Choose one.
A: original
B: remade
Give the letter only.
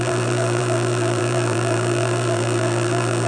B